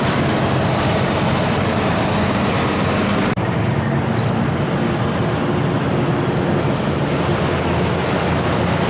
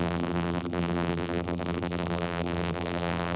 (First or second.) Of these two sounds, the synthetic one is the second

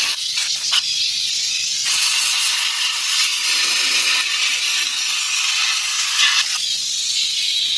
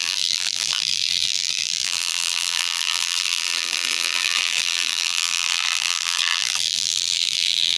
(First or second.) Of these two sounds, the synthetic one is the second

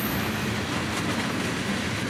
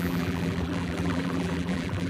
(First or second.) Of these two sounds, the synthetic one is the second